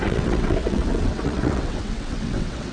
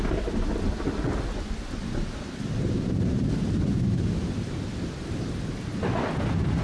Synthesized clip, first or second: first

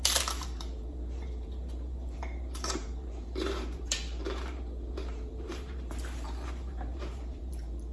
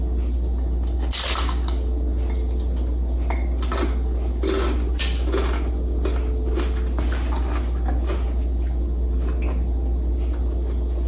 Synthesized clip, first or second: first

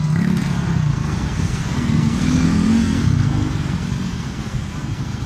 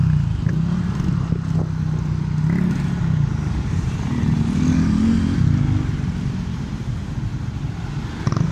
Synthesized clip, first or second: first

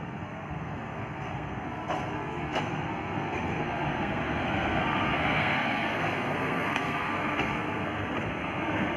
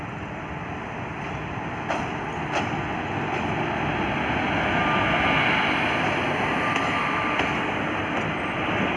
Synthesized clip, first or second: first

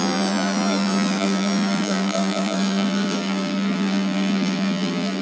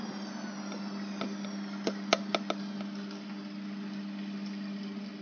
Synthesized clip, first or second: first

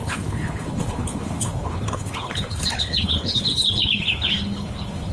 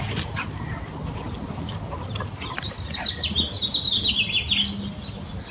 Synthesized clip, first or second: first